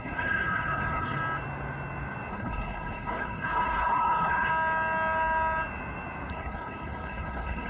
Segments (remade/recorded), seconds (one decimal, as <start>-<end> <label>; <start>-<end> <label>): 0.0-1.2 remade; 1.2-2.3 recorded; 2.3-4.5 remade; 4.5-6.3 recorded; 6.3-7.7 remade